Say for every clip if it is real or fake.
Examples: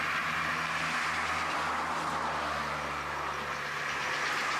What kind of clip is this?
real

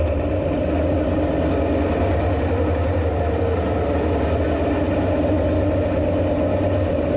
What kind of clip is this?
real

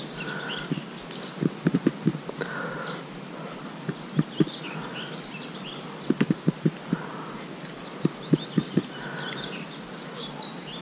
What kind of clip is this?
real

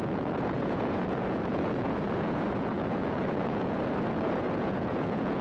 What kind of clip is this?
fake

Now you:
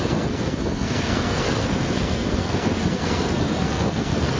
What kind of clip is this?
fake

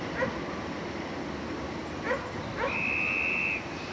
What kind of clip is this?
real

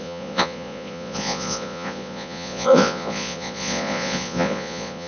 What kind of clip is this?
fake